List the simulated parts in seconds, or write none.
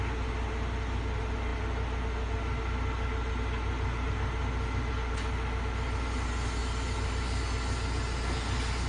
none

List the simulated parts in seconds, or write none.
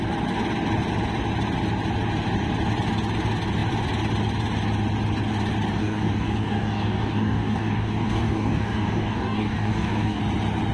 5.8-10.2 (codec, DAC)